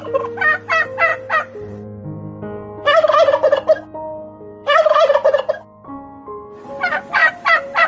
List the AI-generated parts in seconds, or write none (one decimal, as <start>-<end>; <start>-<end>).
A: 1.1-5.5; 7.2-7.9